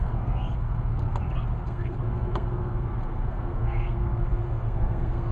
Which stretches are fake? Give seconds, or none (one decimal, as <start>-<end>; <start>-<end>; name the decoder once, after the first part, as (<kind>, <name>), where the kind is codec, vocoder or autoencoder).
0.0-5.3 (codec, SNAC)